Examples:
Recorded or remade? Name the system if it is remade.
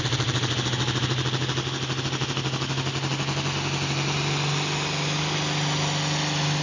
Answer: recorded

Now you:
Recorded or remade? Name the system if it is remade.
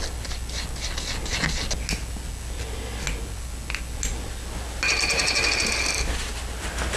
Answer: recorded